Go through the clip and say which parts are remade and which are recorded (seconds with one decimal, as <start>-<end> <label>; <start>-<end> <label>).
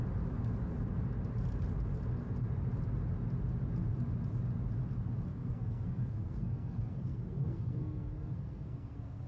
0.0-5.3 recorded; 5.3-9.3 remade